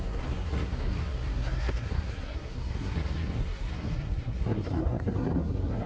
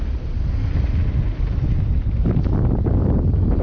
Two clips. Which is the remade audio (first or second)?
first